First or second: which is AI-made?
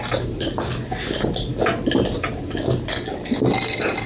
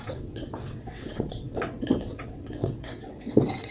second